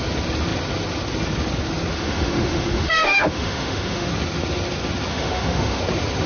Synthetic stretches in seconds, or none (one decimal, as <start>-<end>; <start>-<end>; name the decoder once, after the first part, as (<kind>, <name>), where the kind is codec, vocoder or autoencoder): 1.9-4.1 (autoencoder, DAC-VAE); 5.1-5.8